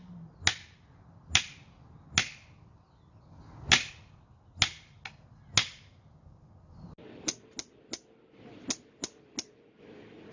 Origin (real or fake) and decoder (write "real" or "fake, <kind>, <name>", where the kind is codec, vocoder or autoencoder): real